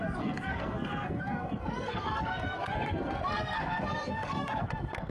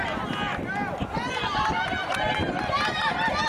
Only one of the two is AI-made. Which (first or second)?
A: first